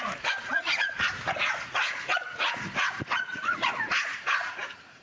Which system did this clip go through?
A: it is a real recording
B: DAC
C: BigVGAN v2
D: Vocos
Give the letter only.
D